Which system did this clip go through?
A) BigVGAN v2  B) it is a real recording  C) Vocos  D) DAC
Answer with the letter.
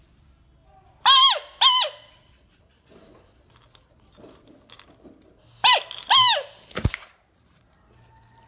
B